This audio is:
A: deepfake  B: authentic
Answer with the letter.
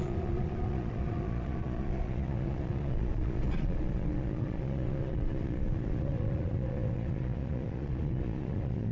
A